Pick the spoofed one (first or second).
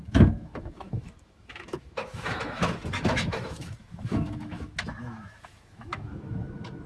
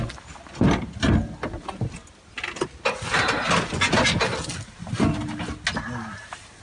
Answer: first